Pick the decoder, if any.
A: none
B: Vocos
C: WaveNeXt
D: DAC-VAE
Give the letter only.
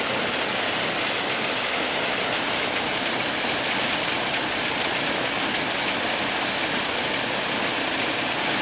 A